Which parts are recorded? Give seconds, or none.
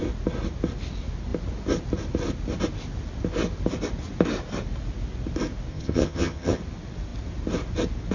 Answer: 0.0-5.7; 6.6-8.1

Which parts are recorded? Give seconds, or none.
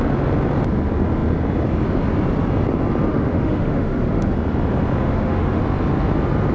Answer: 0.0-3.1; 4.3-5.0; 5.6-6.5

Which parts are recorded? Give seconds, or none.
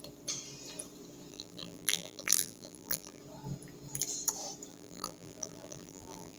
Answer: 0.0-1.3; 3.2-4.7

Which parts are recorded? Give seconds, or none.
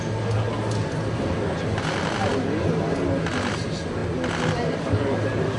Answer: 0.0-5.6